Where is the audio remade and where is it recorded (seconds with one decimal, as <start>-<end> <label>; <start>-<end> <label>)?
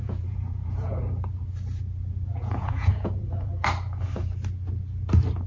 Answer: 0.0-1.0 remade; 1.0-2.3 recorded; 2.3-3.5 remade; 3.5-5.5 recorded